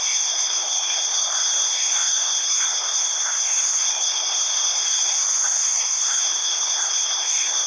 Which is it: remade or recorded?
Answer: remade